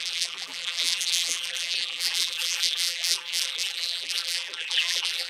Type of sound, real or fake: fake